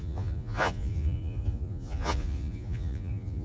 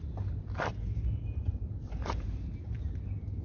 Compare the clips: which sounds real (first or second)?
second